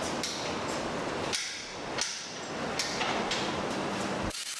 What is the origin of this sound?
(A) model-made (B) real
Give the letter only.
B